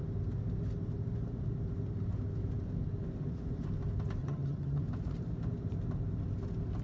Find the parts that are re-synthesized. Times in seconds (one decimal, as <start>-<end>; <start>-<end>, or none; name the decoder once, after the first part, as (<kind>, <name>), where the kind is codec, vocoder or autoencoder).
4.2-4.8 (vocoder, HiFi-GAN)